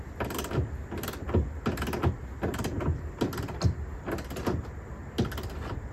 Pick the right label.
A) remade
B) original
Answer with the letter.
B